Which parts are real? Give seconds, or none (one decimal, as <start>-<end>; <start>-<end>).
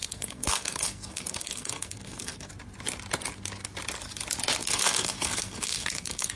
2.5-4.6